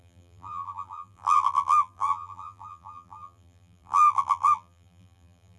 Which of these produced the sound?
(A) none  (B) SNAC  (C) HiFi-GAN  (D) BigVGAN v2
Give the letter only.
D